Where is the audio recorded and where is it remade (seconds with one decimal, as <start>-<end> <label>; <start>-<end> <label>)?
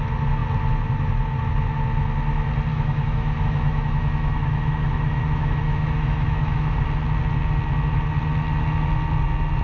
0.0-2.7 recorded; 2.7-6.8 remade; 6.8-9.6 recorded